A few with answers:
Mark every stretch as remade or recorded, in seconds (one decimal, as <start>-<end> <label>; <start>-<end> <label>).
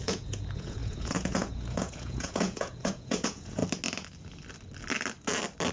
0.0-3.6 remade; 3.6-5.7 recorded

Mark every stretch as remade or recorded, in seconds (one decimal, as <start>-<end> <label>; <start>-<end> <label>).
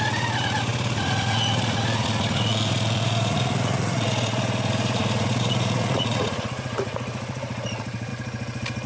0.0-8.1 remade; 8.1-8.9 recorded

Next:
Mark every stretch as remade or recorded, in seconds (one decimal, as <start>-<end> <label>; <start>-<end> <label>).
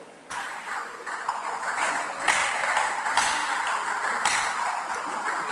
0.0-2.4 remade; 2.4-3.0 recorded; 3.0-3.4 remade; 3.4-5.5 recorded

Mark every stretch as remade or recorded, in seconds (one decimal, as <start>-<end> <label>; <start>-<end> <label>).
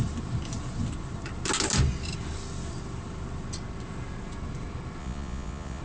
0.0-5.0 recorded; 5.0-5.8 remade